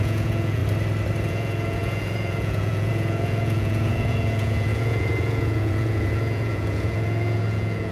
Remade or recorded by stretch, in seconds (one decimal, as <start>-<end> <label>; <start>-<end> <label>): 0.0-0.6 remade; 0.6-1.3 recorded; 1.3-7.9 remade